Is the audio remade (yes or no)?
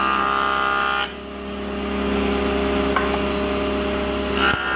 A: no